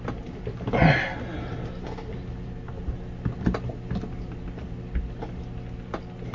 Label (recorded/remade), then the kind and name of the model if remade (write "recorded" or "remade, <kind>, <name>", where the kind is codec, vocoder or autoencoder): recorded